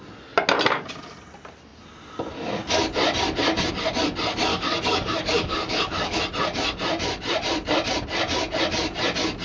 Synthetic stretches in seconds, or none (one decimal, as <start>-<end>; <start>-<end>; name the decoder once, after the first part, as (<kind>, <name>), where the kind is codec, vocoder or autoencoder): 4.5-6.2 (codec, DAC)